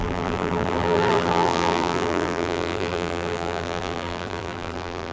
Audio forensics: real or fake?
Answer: fake